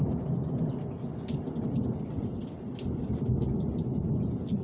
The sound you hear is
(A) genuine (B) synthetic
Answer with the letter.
A